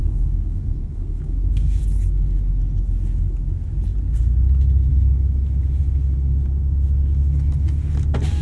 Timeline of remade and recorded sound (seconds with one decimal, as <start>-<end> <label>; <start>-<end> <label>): 0.0-1.8 remade; 1.8-8.4 recorded